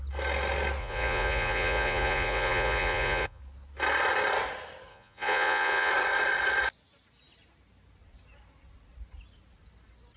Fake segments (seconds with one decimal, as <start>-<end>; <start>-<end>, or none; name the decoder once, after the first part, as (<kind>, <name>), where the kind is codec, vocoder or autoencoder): 0.8-3.4 (vocoder, Vocos); 4.9-5.9

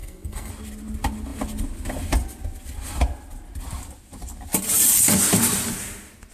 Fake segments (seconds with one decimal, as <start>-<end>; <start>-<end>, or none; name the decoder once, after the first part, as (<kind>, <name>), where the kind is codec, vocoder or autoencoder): 0.0-0.5 (codec, SNAC)

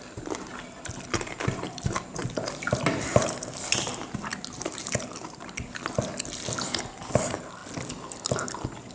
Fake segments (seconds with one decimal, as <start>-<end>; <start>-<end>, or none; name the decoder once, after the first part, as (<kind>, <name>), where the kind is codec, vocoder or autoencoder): 2.2-3.4 (vocoder, BigVGAN v2); 4.3-4.9

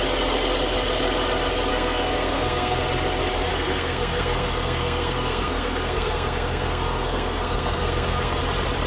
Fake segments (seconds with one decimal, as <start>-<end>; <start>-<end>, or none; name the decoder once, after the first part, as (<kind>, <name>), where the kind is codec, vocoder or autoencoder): 1.7-2.8 (codec, SNAC); 3.5-8.4